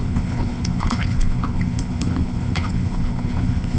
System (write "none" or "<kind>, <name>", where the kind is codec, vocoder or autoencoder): codec, HILCodec